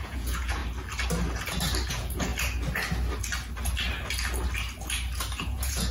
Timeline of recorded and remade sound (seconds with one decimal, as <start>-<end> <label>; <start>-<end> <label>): 0.0-0.6 remade; 0.6-1.9 recorded; 1.9-2.3 remade; 2.3-5.4 recorded; 5.4-5.9 remade